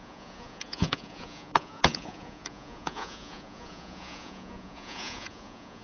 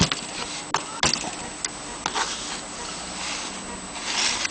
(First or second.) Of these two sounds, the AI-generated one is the first